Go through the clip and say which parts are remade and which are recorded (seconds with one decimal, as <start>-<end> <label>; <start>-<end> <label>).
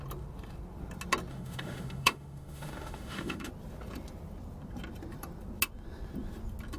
0.0-1.3 recorded; 1.3-3.5 remade; 3.5-6.8 recorded